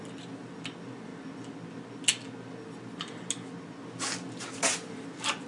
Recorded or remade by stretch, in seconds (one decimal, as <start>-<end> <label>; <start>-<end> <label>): 0.0-1.1 remade; 1.1-4.4 recorded; 4.4-5.5 remade